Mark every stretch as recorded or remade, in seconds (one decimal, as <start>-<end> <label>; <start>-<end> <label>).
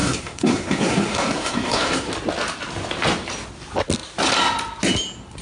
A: 0.0-2.1 remade; 2.1-5.4 recorded